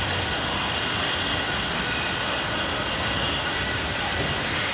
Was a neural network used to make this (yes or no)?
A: no